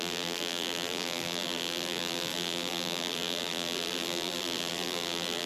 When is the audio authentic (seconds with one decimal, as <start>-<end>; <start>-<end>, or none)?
none